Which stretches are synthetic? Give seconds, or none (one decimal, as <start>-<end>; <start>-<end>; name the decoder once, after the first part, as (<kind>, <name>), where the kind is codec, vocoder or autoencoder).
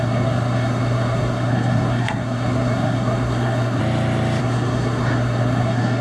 0.0-3.8 (codec, SNAC); 4.4-6.0